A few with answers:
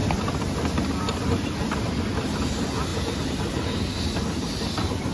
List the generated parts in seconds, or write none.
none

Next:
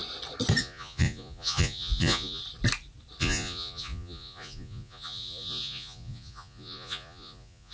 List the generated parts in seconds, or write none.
0.6-2.4 (vocoder, Vocos); 3.2-7.7